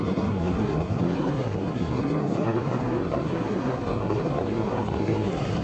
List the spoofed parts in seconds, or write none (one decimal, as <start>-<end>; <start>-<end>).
0.0-5.6